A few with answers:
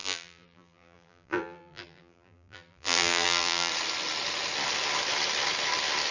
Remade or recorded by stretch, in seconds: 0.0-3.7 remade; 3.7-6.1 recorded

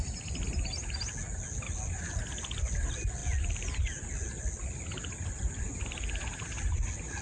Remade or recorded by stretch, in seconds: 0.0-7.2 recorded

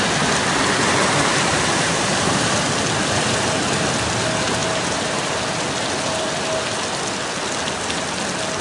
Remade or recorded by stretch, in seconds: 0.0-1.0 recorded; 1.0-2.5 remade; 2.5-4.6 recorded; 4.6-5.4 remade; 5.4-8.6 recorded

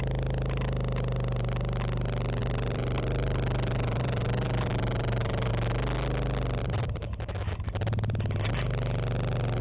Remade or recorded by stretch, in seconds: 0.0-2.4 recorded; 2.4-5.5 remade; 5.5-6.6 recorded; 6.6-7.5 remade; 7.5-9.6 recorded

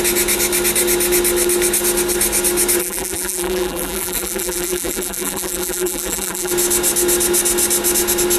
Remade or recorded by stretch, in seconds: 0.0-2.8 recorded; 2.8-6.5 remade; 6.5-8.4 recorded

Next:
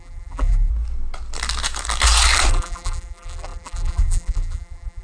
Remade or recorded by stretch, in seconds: 0.0-0.7 remade; 0.7-2.5 recorded; 2.5-5.0 remade